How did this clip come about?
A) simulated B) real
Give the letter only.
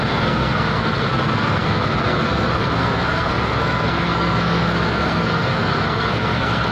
A